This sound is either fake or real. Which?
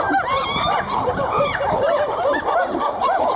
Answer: fake